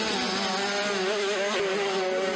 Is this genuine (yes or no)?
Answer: yes